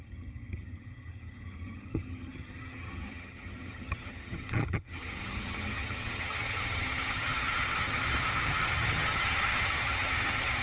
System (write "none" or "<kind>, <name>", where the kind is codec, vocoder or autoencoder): vocoder, HiFi-GAN